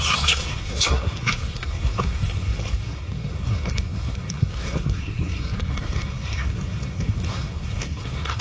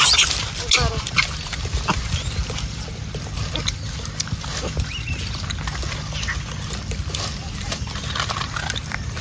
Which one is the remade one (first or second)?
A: first